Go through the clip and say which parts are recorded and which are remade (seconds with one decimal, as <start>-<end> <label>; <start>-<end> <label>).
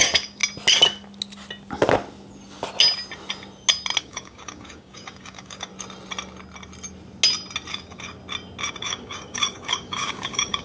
0.0-0.4 remade; 0.4-4.0 recorded; 4.0-5.7 remade; 5.7-7.7 recorded; 7.7-8.2 remade; 8.2-8.7 recorded; 8.7-10.6 remade